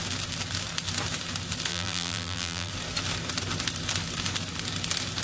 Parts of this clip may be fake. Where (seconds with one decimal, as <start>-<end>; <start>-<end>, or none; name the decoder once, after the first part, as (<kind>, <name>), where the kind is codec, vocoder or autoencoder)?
1.7-2.7 (vocoder, BigVGAN v2)